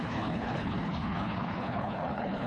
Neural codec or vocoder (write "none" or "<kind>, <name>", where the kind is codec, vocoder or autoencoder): codec, HILCodec